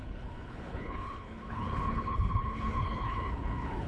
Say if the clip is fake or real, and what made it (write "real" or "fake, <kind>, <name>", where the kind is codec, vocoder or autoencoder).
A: fake, codec, HILCodec